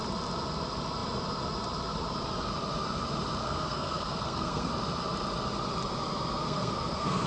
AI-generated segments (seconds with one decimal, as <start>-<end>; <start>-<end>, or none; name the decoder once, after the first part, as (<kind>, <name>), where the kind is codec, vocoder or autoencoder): 3.4-4.7 (codec, SNAC); 6.4-7.3